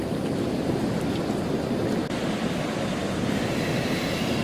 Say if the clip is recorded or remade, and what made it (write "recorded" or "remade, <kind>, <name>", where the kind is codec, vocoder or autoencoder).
remade, vocoder, BigVGAN v2